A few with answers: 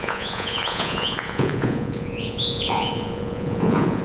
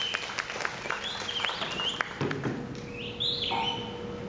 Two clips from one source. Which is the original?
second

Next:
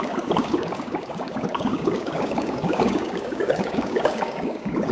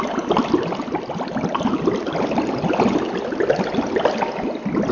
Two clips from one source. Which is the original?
second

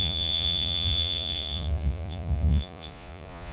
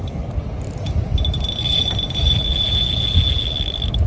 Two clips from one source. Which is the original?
second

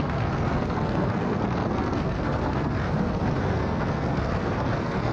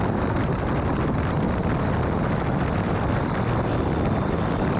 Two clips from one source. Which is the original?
second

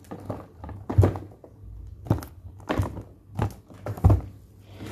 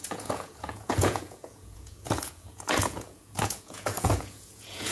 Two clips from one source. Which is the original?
first